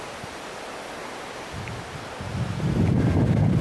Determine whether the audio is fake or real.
real